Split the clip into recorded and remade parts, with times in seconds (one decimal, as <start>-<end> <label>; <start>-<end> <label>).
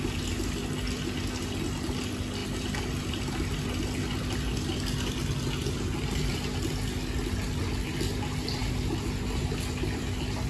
0.0-10.5 recorded